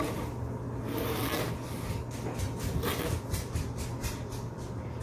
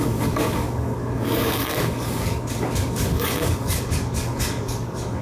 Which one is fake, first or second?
second